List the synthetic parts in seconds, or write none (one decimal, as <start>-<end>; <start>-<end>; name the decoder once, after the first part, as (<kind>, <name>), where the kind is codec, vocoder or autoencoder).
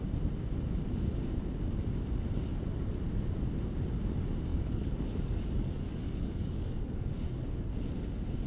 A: 4.5-7.1 (codec, DAC)